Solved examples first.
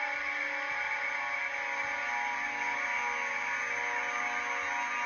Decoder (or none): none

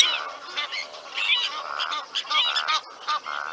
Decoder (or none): none